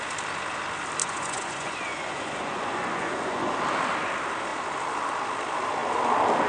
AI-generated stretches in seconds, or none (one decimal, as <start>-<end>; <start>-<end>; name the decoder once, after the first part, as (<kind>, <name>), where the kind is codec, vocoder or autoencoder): 1.0-3.5 (vocoder, Vocos)